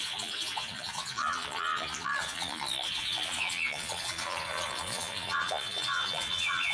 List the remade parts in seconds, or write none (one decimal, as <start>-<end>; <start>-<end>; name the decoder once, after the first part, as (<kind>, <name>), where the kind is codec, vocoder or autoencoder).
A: 0.0-6.7 (vocoder, Vocos)